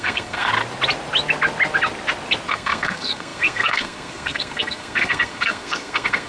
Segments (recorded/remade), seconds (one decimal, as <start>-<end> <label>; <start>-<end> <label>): 0.0-0.5 remade; 0.5-2.5 recorded; 2.5-6.3 remade